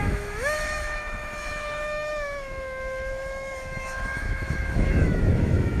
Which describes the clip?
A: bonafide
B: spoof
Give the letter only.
B